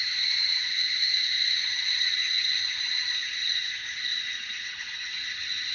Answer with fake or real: fake